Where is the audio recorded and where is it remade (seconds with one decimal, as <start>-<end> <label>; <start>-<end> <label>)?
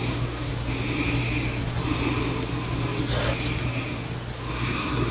0.0-0.5 remade; 0.5-3.6 recorded; 3.6-4.0 remade; 4.0-4.5 recorded; 4.5-5.1 remade